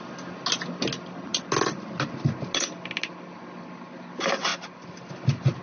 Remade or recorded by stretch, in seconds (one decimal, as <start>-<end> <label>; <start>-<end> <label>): 0.0-5.6 recorded